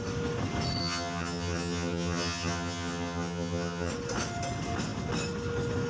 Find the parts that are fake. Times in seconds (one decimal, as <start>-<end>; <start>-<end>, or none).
0.8-3.9